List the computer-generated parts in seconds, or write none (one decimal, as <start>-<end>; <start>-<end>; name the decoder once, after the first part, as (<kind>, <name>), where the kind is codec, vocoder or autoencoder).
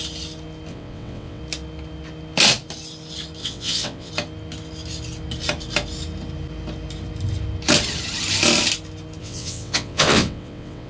0.7-1.4 (vocoder, WaveNeXt); 3.4-4.1; 9.2-10.9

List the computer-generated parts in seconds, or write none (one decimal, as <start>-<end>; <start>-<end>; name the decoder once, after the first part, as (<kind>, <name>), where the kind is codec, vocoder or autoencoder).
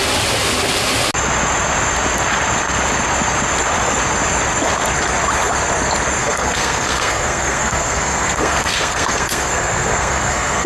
6.2-10.7 (codec, SNAC)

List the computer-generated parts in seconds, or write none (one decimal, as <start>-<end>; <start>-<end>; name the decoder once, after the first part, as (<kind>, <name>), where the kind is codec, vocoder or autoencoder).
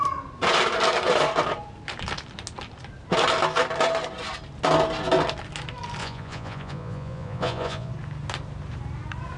6.0-7.9 (vocoder, Vocos)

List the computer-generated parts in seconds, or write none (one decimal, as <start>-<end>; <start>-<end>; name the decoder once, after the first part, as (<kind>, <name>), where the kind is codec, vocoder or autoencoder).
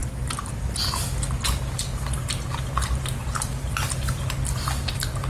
none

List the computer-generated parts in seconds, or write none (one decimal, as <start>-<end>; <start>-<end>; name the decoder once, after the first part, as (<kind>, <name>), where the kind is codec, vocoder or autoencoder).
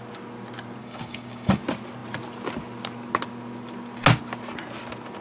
0.8-1.6 (codec, DAC)